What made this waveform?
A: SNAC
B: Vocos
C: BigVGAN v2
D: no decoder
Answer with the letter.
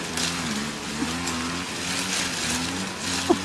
D